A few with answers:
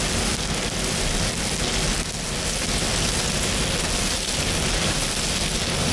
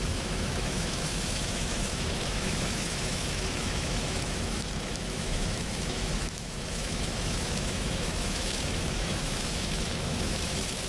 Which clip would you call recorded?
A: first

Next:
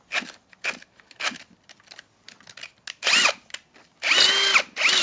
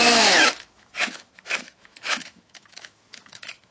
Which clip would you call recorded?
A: first